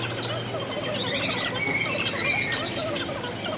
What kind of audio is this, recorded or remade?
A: recorded